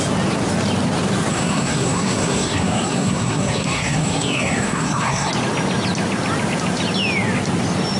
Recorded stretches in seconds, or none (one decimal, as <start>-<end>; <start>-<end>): 0.0-1.3; 5.3-8.0

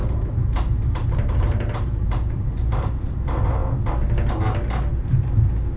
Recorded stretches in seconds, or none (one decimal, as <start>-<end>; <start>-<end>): 3.6-4.9

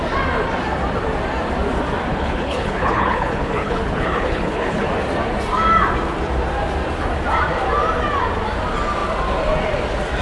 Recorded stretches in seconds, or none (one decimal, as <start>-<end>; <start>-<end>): 0.0-2.1; 4.9-10.2

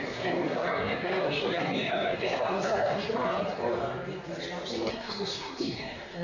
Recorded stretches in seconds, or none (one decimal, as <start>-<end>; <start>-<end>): 3.6-4.9

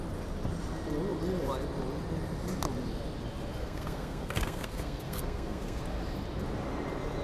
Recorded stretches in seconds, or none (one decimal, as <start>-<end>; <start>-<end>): 0.0-3.6; 5.8-7.2

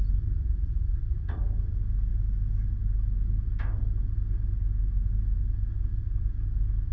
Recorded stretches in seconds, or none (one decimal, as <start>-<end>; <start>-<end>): 0.0-0.4; 1.4-6.9

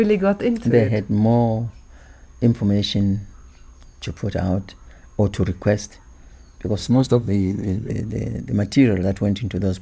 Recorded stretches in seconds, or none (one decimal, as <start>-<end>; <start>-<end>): 0.0-6.8; 7.9-9.8

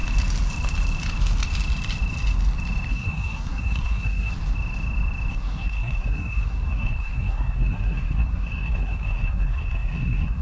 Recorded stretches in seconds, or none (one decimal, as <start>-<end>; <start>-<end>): 0.0-2.9; 4.3-5.3